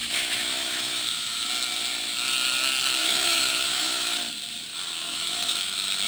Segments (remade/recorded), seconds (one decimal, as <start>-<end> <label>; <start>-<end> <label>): 0.0-1.5 remade; 1.5-3.0 recorded; 3.0-4.2 remade; 4.2-4.7 recorded; 4.7-6.1 remade